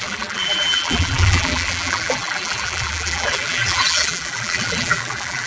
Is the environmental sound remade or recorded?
remade